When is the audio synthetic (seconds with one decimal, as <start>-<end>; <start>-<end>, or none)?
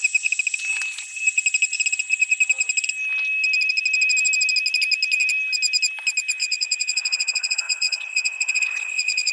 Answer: 6.4-9.3